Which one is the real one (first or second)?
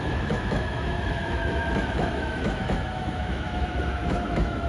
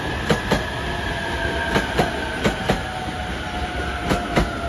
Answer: second